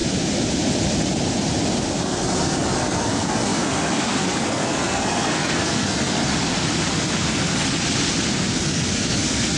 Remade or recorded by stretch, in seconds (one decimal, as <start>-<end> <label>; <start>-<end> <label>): 0.0-1.9 recorded; 1.9-6.2 remade; 6.2-6.9 recorded; 6.9-7.5 remade; 7.5-8.5 recorded; 8.5-9.6 remade